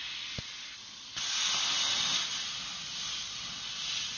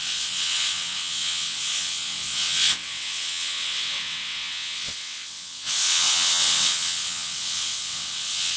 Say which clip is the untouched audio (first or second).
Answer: first